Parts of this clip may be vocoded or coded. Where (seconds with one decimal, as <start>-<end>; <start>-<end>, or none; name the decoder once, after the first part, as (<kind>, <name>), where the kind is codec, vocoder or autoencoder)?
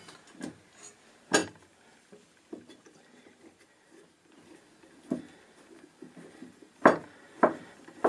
1.4-4.4 (vocoder, BigVGAN v2); 6.4-8.1